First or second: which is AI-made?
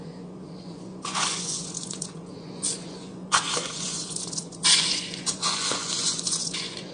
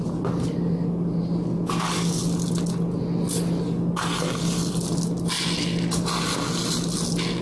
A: first